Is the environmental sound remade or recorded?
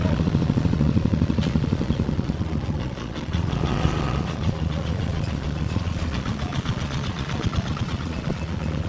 remade